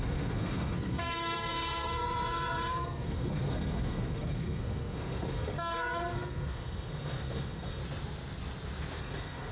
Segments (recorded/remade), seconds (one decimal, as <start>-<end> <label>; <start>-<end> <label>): 0.0-7.8 remade; 7.8-9.0 recorded; 9.0-9.5 remade